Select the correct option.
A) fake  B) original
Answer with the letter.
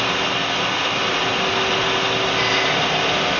B